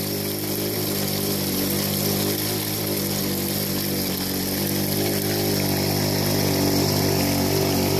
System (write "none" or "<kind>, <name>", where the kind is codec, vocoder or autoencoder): none